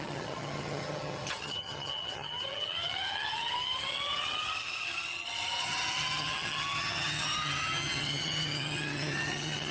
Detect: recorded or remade remade